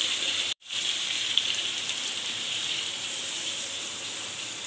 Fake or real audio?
fake